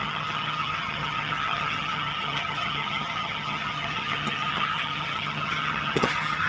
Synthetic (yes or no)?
yes